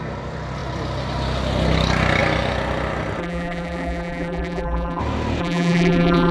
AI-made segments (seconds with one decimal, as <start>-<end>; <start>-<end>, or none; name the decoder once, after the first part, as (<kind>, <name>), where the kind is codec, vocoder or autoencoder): 3.2-5.0 (vocoder, BigVGAN v2); 5.4-6.3